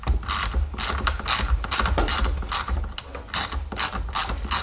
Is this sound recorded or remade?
recorded